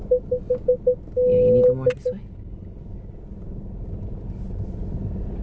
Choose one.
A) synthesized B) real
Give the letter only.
B